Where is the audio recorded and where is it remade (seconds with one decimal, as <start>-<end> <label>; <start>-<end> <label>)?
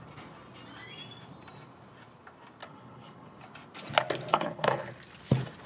0.0-2.6 recorded; 2.6-3.4 remade; 3.4-4.3 recorded; 4.3-4.9 remade; 4.9-5.7 recorded